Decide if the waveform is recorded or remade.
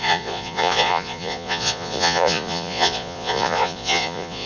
remade